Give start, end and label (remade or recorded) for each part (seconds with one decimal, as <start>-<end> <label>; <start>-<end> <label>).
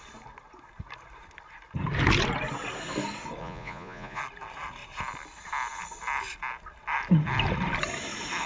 0.0-3.4 recorded; 3.4-4.2 remade; 4.2-8.5 recorded